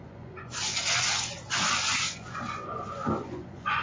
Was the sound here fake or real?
fake